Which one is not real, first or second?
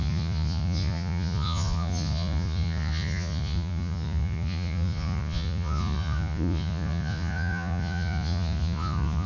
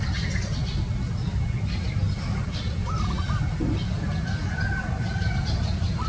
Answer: first